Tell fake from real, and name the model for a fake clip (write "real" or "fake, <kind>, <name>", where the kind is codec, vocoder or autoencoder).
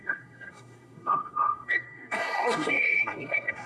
fake, codec, SNAC